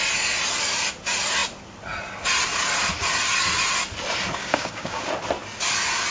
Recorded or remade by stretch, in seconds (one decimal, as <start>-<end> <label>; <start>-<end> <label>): 0.0-4.4 recorded; 4.4-5.1 remade; 5.1-6.1 recorded